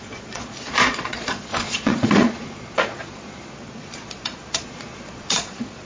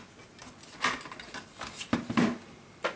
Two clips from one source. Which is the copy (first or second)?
first